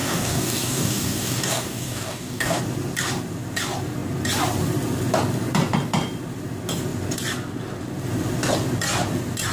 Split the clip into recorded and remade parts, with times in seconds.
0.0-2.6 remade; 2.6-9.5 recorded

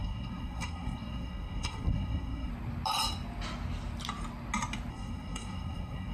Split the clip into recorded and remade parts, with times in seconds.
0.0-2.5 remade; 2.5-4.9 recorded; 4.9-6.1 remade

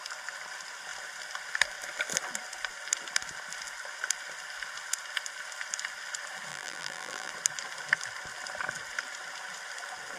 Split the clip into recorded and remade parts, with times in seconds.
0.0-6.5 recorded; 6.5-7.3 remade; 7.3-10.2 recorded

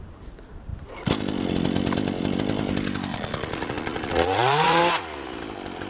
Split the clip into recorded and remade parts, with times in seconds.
0.0-3.1 recorded; 3.1-4.8 remade; 4.8-5.9 recorded

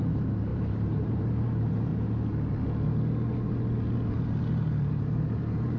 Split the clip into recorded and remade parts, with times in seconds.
0.0-1.9 remade; 1.9-4.1 recorded; 4.1-5.8 remade

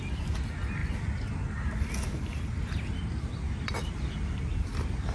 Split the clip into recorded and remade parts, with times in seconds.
0.0-5.1 recorded

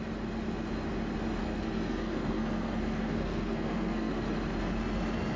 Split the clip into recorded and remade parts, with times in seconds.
0.0-1.4 recorded; 1.4-4.1 remade; 4.1-5.4 recorded

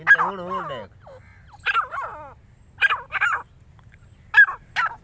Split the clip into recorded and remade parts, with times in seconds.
0.0-5.0 recorded